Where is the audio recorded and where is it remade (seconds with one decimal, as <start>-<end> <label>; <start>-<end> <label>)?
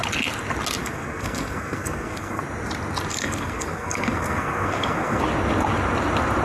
0.0-0.8 recorded; 0.8-2.4 remade; 2.4-3.1 recorded; 3.1-5.2 remade; 5.2-6.4 recorded